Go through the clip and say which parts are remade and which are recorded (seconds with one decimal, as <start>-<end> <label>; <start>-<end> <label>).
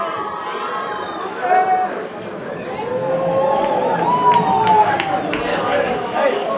0.0-5.5 recorded; 5.5-6.6 remade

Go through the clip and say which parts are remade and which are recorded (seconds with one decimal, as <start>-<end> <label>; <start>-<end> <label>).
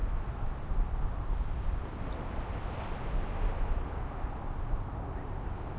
0.0-5.8 recorded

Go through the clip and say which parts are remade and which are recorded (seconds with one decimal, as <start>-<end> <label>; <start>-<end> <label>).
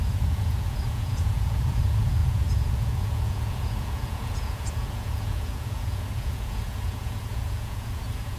0.0-8.4 remade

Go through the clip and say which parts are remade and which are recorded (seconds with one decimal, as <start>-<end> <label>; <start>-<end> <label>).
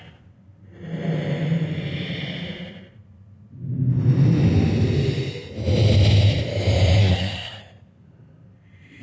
0.0-7.0 recorded; 7.0-7.6 remade; 7.6-9.0 recorded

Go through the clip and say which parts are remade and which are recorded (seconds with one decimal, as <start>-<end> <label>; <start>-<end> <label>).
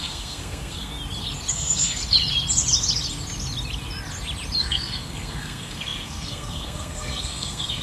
0.0-0.9 remade; 0.9-1.5 recorded; 1.5-2.0 remade; 2.0-4.6 recorded; 4.6-7.8 remade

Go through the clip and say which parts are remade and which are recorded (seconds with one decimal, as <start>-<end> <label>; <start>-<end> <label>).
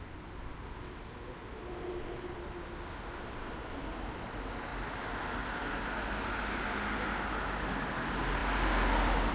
0.0-9.3 recorded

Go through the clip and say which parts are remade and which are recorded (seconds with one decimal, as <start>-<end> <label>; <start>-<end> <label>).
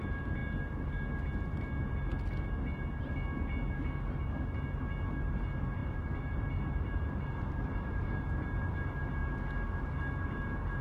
0.0-5.8 recorded; 5.8-8.7 remade; 8.7-10.8 recorded